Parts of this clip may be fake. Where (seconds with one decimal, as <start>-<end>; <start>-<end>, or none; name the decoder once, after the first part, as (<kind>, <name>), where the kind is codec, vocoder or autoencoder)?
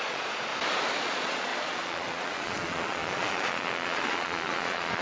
0.0-0.5 (vocoder, Vocos); 1.0-5.0